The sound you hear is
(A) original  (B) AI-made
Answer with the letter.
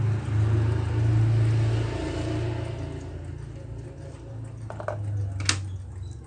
A